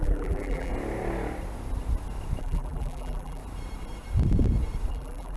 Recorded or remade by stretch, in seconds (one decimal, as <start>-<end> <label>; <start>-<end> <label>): 0.0-0.7 remade; 0.7-2.4 recorded; 2.4-3.4 remade; 3.4-4.9 recorded; 4.9-5.4 remade